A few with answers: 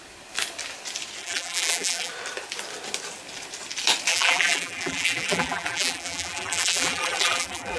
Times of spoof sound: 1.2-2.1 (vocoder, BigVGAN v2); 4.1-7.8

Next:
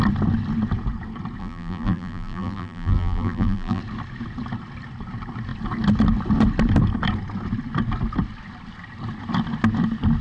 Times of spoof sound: 1.4-3.8 (vocoder, BigVGAN v2)